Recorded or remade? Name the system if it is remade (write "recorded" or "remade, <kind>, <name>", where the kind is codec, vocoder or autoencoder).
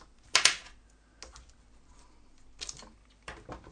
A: recorded